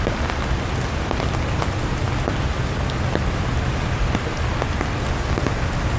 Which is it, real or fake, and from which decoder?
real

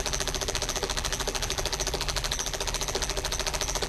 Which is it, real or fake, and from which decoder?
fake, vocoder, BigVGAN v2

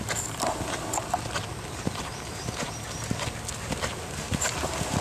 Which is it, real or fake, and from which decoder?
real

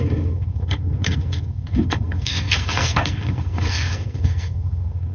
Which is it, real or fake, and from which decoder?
fake, codec, SNAC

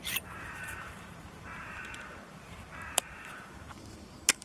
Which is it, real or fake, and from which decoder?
fake, vocoder, BigVGAN v2